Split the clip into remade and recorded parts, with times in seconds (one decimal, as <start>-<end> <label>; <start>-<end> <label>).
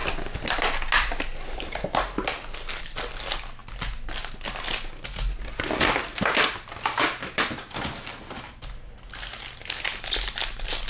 0.0-10.9 recorded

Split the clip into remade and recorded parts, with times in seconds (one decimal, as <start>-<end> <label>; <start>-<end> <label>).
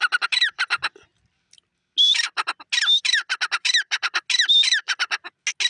0.0-5.7 recorded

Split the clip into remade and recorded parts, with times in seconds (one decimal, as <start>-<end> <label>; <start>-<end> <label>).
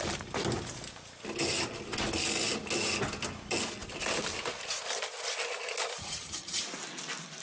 0.0-6.0 recorded; 6.0-6.6 remade; 6.6-7.4 recorded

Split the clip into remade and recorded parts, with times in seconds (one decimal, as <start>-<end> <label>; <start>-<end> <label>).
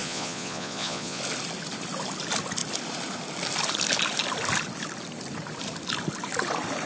0.0-1.2 remade; 1.2-6.9 recorded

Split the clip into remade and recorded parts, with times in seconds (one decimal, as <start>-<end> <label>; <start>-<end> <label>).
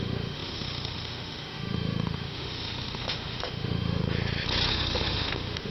0.0-4.0 remade; 4.0-4.7 recorded; 4.7-5.7 remade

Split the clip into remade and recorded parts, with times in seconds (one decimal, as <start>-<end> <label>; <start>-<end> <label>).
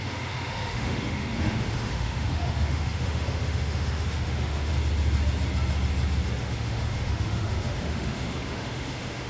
0.0-4.7 remade; 4.7-6.4 recorded; 6.4-9.3 remade